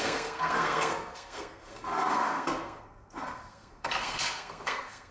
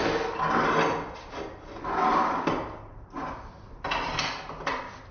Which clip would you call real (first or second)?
second